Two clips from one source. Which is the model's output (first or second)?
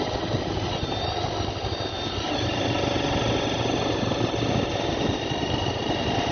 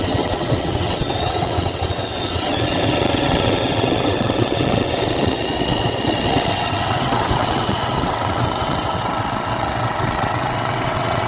second